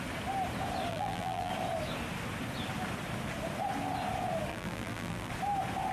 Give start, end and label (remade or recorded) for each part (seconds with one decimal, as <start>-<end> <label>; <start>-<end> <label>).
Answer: 0.0-0.9 recorded; 0.9-1.5 remade; 1.5-4.5 recorded; 4.5-5.3 remade; 5.3-5.9 recorded